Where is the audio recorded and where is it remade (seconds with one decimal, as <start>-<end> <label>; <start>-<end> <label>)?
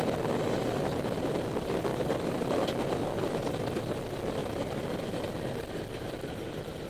0.0-1.9 recorded; 1.9-3.7 remade; 3.7-4.4 recorded; 4.4-5.1 remade; 5.1-6.9 recorded